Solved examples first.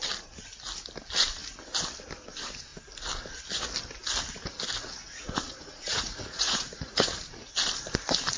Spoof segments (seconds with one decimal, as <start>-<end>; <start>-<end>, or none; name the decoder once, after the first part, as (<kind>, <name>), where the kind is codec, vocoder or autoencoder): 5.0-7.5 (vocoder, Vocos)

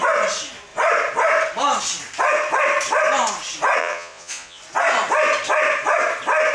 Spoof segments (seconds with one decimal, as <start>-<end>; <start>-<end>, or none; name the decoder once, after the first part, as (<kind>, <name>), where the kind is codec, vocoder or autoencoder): 3.8-4.6 (vocoder, Vocos)

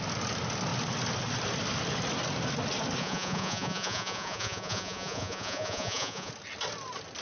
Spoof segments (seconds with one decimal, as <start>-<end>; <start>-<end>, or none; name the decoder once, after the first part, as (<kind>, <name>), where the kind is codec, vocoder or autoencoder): 3.0-6.3 (vocoder, Vocos)

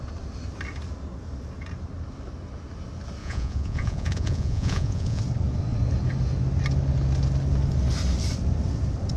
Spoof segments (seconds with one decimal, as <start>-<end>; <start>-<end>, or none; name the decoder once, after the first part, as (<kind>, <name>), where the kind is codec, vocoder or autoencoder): 3.2-5.2 (vocoder, Vocos)